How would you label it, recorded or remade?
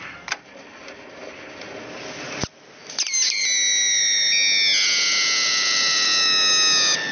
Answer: recorded